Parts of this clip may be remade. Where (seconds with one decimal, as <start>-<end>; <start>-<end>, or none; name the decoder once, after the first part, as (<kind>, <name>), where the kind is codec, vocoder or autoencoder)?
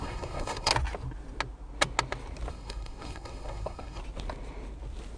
0.0-0.7 (codec, SNAC); 2.5-4.0